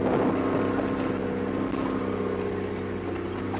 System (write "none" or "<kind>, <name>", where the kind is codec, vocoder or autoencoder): none